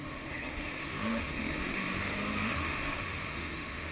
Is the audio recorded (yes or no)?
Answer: no